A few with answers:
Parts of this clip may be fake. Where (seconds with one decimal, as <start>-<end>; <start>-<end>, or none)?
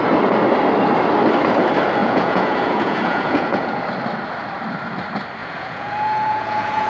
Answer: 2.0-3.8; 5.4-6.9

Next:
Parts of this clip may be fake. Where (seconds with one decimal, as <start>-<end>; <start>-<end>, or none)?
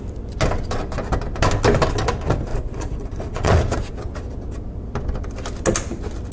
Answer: 2.5-3.9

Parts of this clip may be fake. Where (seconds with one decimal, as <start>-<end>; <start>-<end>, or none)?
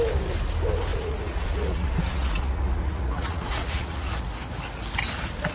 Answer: 0.9-4.2